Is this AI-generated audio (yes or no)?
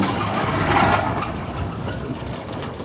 yes